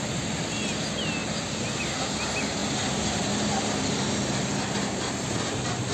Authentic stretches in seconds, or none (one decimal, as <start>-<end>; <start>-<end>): 0.0-1.2; 1.8-5.9